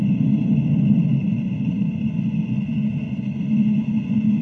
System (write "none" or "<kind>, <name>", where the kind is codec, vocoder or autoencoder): vocoder, Vocos